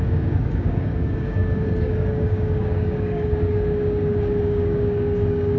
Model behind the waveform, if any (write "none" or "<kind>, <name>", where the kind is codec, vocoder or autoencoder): codec, DAC